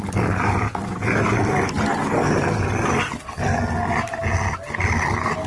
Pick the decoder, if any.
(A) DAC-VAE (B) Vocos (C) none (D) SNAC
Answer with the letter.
C